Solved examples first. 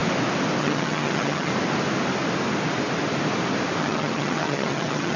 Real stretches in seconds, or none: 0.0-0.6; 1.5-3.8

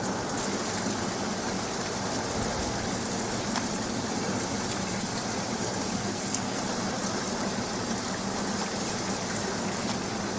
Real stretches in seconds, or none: 0.0-6.0; 6.6-10.4

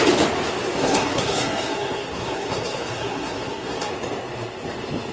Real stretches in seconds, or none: 0.0-0.8; 3.9-5.1

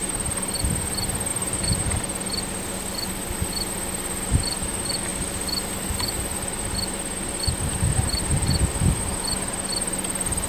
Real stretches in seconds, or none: 0.0-1.3; 2.0-10.5

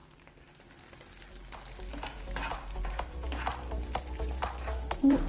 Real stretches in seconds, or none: 0.6-1.9